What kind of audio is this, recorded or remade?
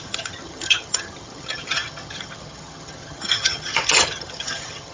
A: remade